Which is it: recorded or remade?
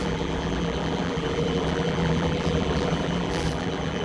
remade